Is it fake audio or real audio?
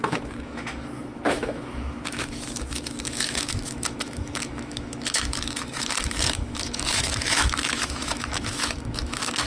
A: fake